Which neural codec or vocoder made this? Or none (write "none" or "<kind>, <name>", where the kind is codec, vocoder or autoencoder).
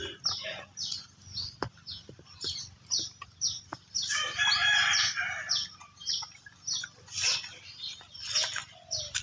none